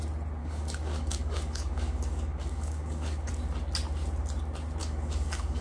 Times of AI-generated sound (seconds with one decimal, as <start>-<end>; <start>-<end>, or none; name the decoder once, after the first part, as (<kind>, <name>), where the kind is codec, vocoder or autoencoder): 0.4-3.3 (codec, DAC); 4.8-5.6